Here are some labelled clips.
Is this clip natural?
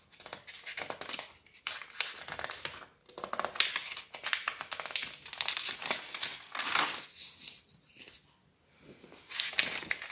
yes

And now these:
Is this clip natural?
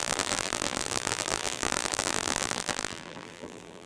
no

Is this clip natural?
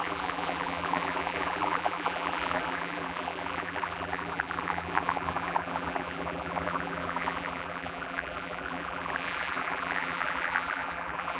no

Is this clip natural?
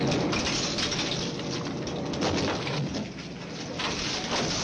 yes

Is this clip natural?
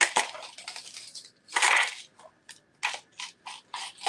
yes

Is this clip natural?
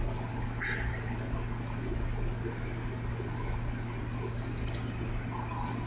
yes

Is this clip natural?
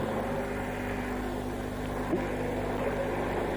yes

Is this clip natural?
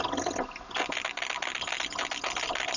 yes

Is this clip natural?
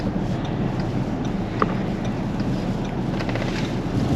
yes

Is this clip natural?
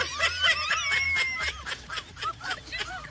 no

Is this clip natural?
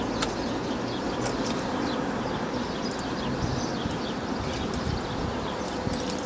yes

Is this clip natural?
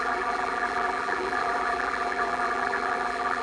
no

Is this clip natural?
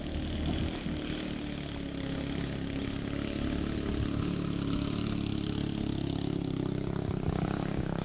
yes